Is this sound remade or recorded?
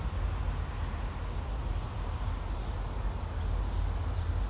recorded